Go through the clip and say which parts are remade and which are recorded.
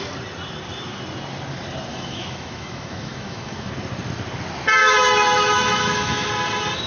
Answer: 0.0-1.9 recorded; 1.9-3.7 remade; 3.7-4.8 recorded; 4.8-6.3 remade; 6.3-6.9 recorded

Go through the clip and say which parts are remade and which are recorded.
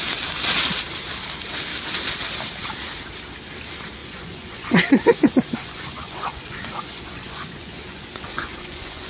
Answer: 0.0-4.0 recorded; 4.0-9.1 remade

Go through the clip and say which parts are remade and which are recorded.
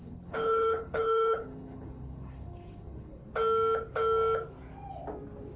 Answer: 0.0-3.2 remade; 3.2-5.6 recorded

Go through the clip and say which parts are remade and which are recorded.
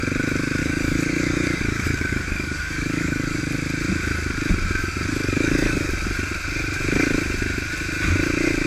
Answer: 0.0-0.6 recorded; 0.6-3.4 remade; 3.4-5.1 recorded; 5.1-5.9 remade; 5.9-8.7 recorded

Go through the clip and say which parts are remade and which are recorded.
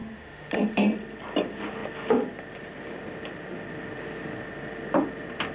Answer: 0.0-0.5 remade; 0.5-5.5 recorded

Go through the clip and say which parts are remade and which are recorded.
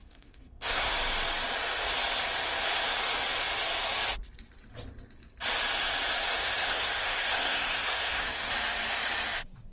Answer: 0.0-0.9 remade; 0.9-6.4 recorded; 6.4-8.5 remade; 8.5-9.7 recorded